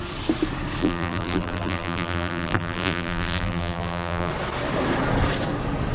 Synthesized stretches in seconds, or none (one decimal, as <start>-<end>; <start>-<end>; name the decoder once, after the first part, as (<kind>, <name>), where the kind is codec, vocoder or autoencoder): 0.8-4.3 (vocoder, BigVGAN v2)